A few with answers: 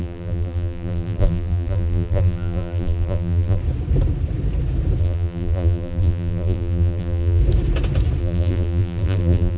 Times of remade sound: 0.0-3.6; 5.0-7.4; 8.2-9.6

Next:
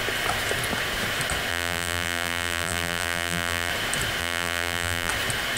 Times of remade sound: 1.5-3.7; 4.2-5.1

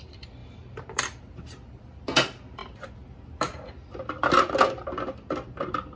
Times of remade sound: 0.4-2.0

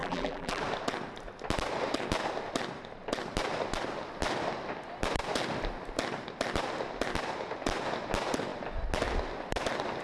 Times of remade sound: 0.0-0.6

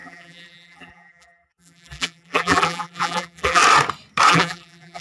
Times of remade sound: 0.0-3.6; 4.3-5.0

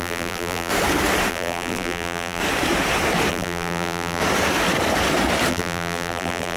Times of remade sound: 0.0-0.7; 1.3-2.4; 3.3-4.2; 5.5-6.6

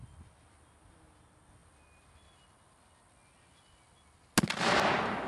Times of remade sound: none

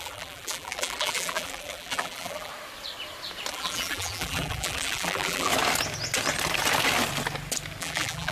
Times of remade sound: 0.0-2.5; 3.5-5.5; 7.8-8.3